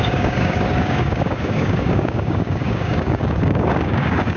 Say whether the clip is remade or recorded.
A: remade